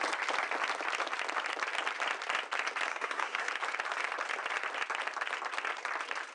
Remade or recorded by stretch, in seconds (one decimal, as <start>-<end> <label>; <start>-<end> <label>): 0.0-2.9 recorded; 2.9-3.5 remade; 3.5-6.3 recorded